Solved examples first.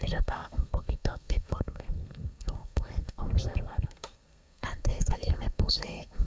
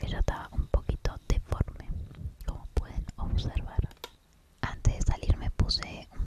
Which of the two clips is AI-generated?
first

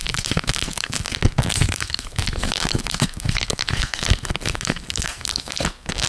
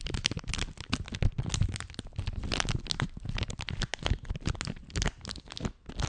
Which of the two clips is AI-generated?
first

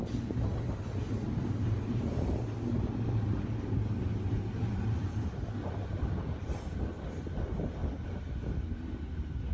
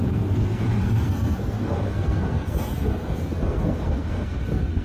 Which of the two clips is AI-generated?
second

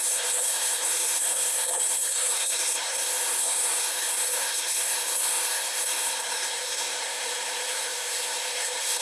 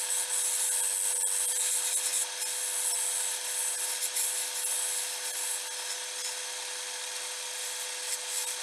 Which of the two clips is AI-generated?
first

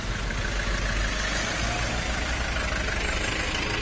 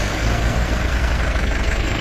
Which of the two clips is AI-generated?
second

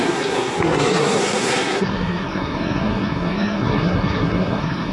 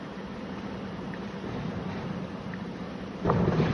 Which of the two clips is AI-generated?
first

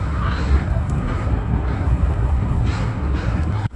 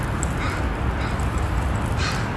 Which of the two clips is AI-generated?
first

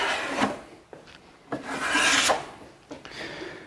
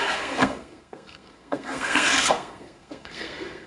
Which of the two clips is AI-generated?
second